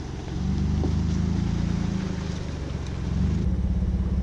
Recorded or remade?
recorded